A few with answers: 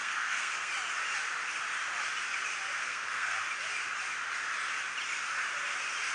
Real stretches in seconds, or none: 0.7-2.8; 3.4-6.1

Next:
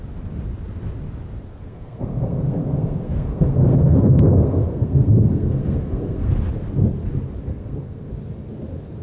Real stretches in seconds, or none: 0.0-1.5; 6.3-7.5; 8.1-9.0